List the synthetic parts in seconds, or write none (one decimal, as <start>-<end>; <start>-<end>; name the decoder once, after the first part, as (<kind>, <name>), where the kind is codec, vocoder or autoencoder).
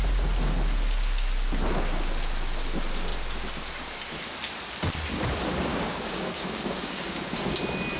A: 5.7-7.5 (codec, DAC)